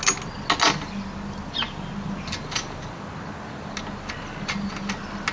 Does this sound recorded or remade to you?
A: recorded